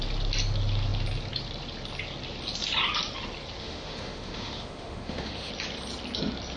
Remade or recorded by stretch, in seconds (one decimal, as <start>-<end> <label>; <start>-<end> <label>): 0.0-3.6 recorded; 3.6-5.5 remade; 5.5-6.6 recorded